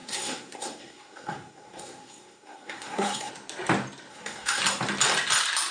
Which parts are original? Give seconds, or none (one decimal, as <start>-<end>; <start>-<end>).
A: 3.3-4.1; 4.6-5.7